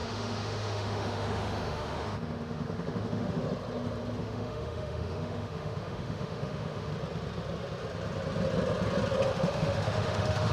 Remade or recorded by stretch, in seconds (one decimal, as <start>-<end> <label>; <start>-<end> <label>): 0.0-3.4 remade; 3.4-4.2 recorded; 4.2-6.9 remade; 6.9-9.3 recorded; 9.3-10.5 remade